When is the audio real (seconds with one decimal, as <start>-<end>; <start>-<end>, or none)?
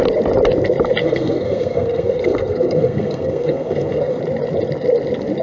0.0-1.0; 4.2-5.4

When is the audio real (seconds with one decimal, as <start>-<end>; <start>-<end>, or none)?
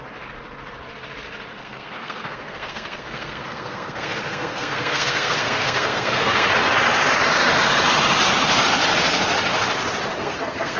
0.0-1.5; 6.5-10.2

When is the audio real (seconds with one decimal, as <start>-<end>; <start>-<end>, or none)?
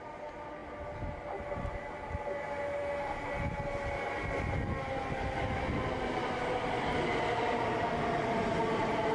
0.0-9.1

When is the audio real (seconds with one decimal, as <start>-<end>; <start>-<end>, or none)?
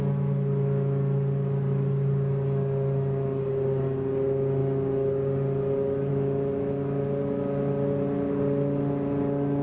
0.0-9.6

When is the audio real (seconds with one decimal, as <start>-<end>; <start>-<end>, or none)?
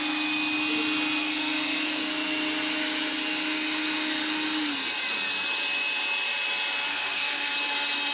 0.0-1.2; 2.0-6.9; 7.5-8.1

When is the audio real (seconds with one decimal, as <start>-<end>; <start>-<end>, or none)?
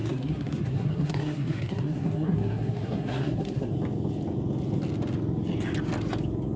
3.7-6.6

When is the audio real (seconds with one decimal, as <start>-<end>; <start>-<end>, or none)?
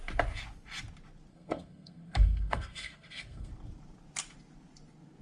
0.0-1.3; 3.5-5.2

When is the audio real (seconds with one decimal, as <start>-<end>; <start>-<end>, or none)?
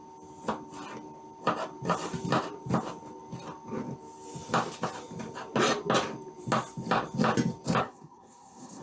0.0-7.8